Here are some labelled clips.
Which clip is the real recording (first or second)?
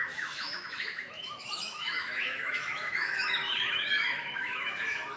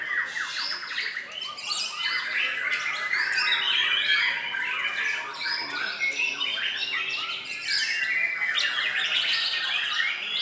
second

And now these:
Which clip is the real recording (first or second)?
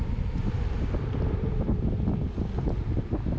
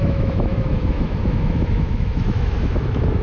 first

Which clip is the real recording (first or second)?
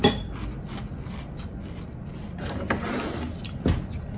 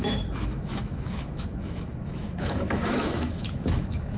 first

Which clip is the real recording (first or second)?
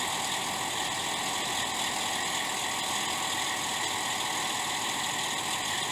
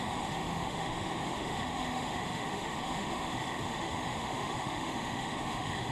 first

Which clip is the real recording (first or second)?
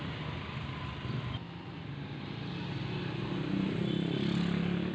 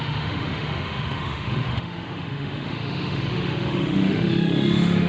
first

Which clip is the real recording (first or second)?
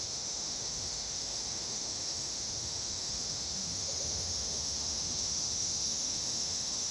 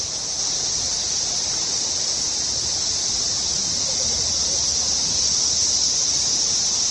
second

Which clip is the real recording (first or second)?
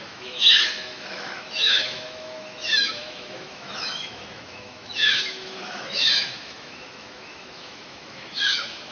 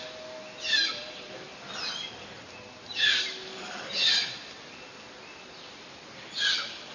second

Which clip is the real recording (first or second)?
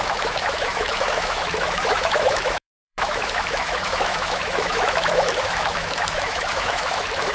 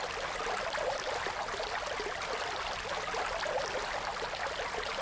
second